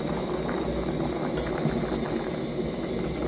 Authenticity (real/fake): real